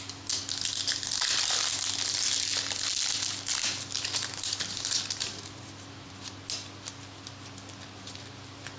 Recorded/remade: recorded